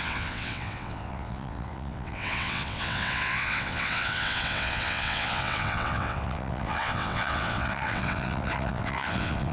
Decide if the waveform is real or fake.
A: fake